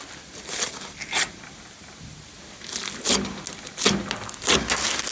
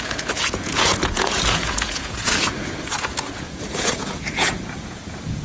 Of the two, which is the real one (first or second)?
first